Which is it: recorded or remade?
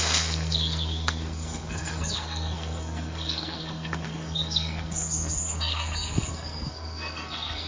remade